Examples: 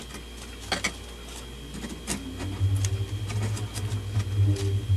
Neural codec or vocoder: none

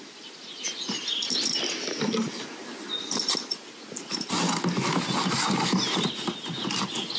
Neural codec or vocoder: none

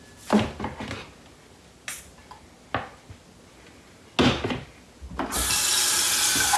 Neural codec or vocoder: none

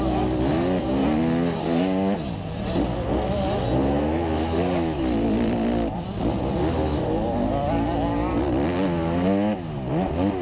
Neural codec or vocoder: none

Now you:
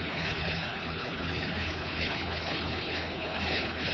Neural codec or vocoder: codec, HILCodec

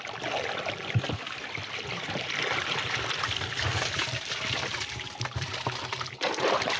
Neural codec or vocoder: vocoder, BigVGAN v2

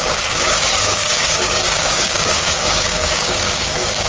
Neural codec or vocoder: codec, DAC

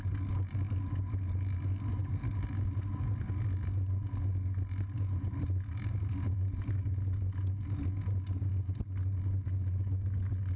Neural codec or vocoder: none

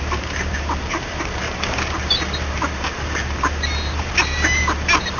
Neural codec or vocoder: vocoder, BigVGAN v2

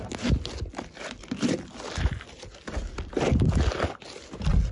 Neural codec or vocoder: none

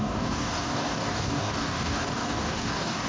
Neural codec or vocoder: codec, DAC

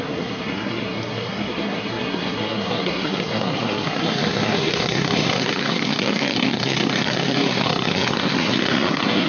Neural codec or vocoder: codec, SNAC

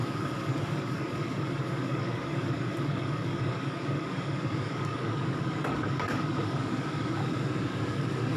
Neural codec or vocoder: codec, DAC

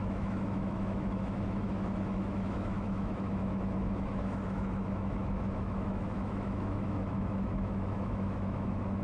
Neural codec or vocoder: autoencoder, DAC-VAE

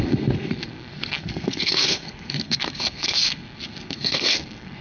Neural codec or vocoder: codec, SNAC